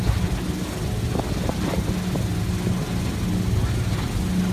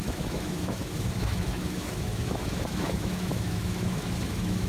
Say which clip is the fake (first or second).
second